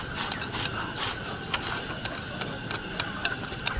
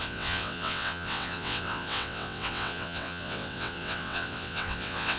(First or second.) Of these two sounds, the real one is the first